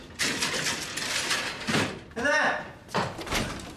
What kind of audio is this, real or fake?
real